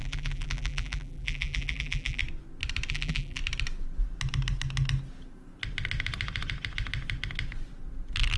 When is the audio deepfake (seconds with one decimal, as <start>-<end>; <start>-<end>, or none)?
0.0-2.2; 2.9-3.4